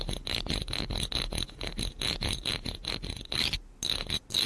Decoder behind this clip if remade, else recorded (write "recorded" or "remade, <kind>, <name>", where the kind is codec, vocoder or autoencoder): recorded